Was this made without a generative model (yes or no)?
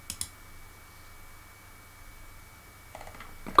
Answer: yes